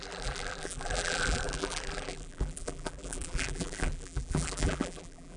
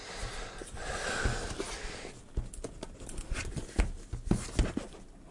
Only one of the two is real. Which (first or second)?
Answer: second